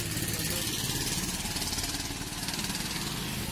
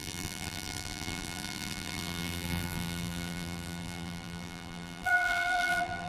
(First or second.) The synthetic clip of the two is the second